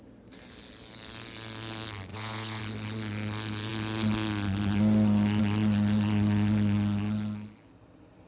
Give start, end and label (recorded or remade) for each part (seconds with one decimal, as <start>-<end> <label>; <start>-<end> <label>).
0.0-2.1 recorded; 2.1-2.6 remade; 2.6-8.3 recorded